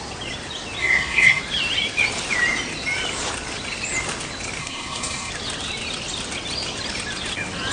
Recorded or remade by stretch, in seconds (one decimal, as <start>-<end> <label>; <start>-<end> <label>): 0.0-0.8 recorded; 0.8-1.4 remade; 1.4-4.6 recorded; 4.6-5.3 remade; 5.3-7.7 recorded